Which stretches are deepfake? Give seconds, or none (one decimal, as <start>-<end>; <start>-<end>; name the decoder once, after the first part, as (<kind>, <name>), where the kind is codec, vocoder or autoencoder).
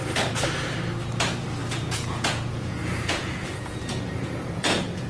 1.6-5.1 (vocoder, Vocos)